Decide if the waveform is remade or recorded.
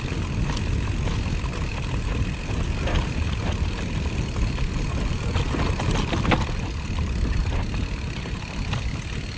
recorded